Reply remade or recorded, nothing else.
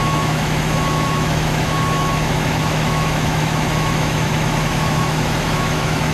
remade